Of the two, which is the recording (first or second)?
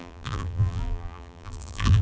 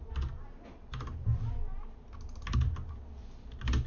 second